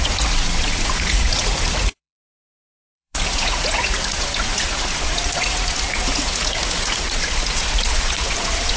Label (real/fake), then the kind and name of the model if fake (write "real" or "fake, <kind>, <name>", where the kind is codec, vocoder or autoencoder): fake, vocoder, Vocos